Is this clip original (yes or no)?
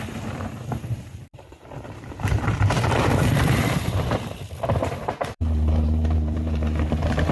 no